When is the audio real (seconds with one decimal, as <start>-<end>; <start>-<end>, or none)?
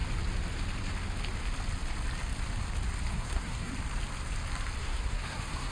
0.0-3.1; 3.7-4.8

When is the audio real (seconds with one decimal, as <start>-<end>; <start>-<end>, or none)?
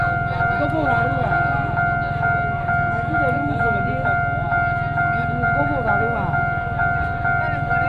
0.0-7.9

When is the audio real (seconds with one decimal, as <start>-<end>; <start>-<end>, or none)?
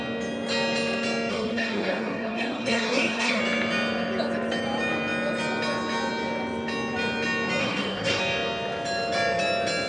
0.0-1.3; 3.4-7.6; 8.2-9.9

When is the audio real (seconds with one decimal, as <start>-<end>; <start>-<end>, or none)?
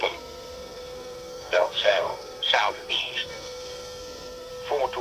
4.5-5.0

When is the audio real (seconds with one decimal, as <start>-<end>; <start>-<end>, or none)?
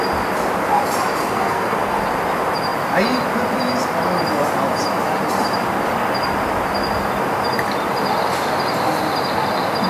0.0-1.2; 2.0-9.9